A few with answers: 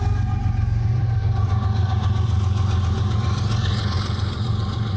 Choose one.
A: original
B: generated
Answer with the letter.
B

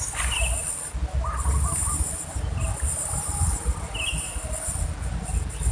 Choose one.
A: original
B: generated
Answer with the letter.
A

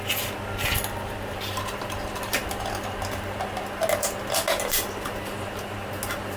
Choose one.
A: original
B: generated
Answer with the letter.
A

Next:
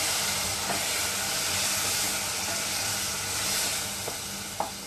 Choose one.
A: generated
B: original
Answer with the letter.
B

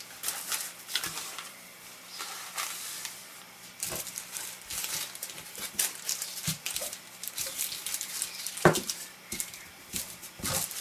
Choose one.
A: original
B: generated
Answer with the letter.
B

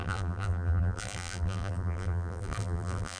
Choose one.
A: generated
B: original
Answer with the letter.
A